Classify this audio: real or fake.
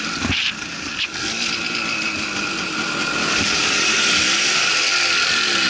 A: real